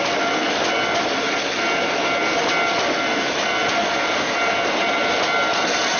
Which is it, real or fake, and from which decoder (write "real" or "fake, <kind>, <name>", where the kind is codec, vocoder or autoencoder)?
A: real